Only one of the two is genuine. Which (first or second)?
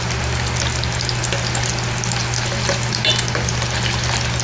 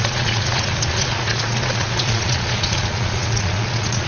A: first